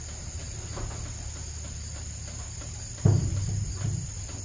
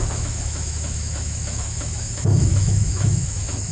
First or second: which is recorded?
first